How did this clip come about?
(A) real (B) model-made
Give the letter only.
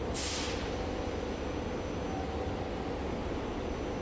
A